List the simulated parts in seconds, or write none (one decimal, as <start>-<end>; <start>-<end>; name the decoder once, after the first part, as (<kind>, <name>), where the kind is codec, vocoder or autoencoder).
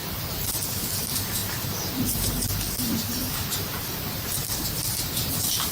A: 0.0-0.9 (vocoder, BigVGAN v2); 1.4-4.8